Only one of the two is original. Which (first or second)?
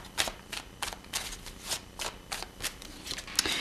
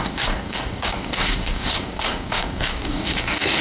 first